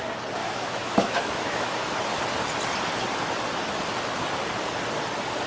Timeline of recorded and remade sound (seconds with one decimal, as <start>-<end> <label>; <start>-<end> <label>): 0.0-0.4 recorded; 0.4-2.0 remade; 2.0-5.5 recorded